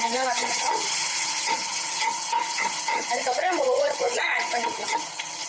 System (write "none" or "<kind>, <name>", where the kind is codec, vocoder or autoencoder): vocoder, HiFi-GAN